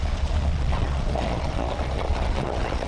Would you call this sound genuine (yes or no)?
no